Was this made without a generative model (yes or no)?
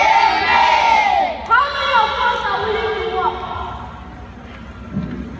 yes